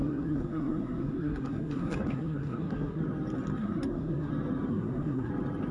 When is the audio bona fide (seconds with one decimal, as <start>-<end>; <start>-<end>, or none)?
3.0-3.6; 4.3-4.7; 5.3-5.7